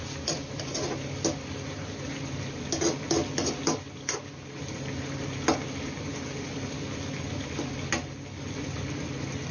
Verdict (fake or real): real